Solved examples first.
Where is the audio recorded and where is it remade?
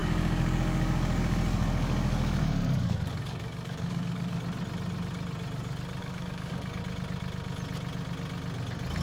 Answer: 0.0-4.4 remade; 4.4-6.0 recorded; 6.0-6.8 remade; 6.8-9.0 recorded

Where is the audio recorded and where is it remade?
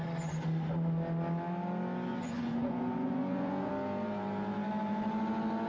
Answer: 0.0-2.1 recorded; 2.1-3.7 remade; 3.7-5.7 recorded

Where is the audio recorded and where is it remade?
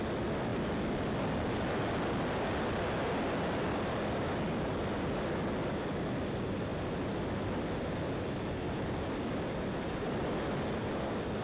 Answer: 0.0-11.4 recorded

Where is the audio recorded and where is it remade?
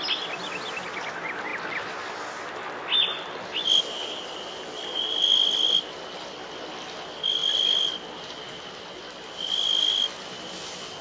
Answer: 0.0-11.0 recorded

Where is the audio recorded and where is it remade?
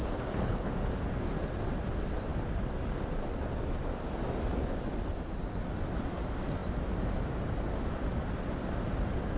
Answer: 0.0-0.7 remade; 0.7-9.4 recorded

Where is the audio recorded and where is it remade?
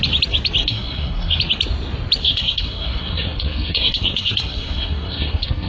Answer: 0.0-0.6 recorded; 0.6-1.4 remade; 1.4-2.2 recorded; 2.2-5.7 remade